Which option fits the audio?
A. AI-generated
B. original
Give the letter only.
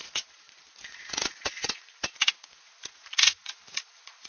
A